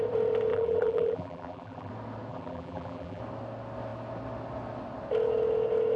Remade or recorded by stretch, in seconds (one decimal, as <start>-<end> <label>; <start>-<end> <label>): 0.0-0.5 recorded; 0.5-1.9 remade; 1.9-2.3 recorded; 2.3-3.2 remade; 3.2-6.0 recorded